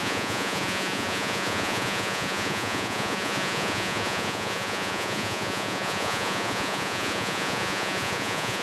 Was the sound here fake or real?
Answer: fake